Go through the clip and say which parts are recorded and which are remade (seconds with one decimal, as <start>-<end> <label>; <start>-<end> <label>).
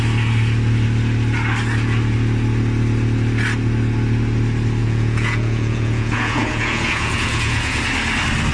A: 0.0-4.8 recorded; 4.8-7.8 remade; 7.8-8.5 recorded